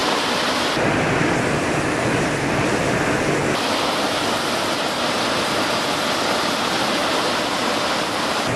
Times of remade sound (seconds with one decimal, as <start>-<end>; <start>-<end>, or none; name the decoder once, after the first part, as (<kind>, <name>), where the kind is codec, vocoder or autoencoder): none